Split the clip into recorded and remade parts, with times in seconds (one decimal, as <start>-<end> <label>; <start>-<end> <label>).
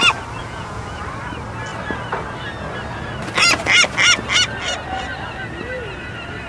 0.0-0.4 recorded; 0.4-1.0 remade; 1.0-6.5 recorded